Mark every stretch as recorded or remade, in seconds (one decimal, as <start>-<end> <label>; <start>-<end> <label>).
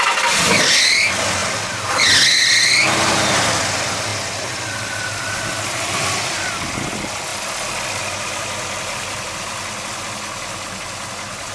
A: 0.0-11.5 recorded